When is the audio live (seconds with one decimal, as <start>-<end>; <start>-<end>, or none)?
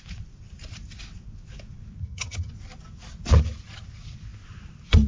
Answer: 0.0-2.0; 2.5-5.1